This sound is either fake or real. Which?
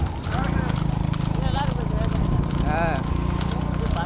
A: real